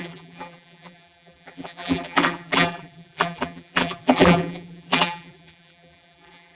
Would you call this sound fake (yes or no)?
yes